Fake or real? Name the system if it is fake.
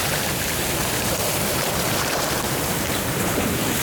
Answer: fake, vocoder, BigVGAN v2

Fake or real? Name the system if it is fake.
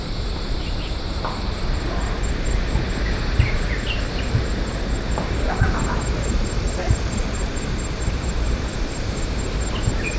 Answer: fake, vocoder, BigVGAN v2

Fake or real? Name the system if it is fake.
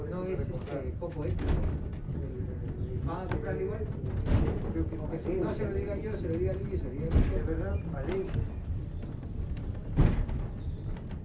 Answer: real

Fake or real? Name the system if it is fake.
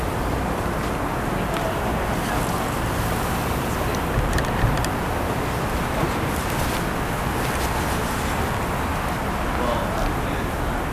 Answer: real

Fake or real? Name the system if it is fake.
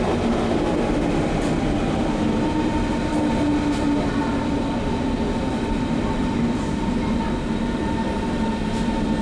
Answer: real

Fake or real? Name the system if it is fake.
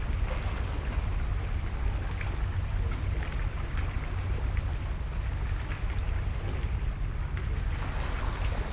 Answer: real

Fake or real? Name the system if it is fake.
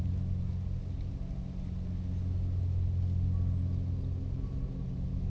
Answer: real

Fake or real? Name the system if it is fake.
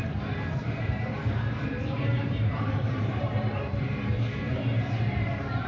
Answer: fake, vocoder, BigVGAN v2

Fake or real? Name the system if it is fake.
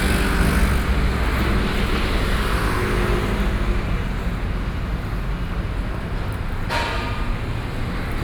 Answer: real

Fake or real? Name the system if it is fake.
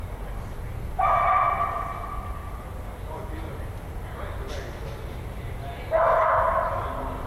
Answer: real